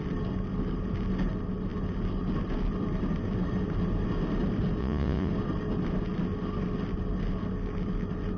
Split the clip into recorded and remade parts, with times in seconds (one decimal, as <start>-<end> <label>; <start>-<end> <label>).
0.0-4.8 recorded; 4.8-5.3 remade; 5.3-8.4 recorded